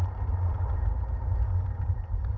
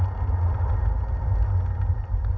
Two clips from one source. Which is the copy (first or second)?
first